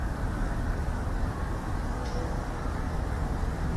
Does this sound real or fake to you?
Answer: fake